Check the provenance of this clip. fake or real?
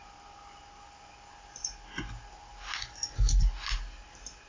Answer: real